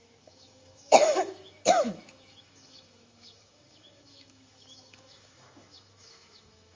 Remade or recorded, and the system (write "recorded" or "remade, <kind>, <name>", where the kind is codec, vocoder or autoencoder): remade, autoencoder, DAC-VAE